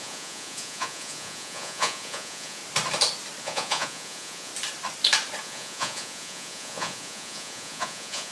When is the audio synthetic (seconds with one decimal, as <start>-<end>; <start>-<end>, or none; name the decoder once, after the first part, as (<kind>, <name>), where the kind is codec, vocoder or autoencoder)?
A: 0.0-2.6 (vocoder, Vocos); 3.4-4.5; 5.4-8.3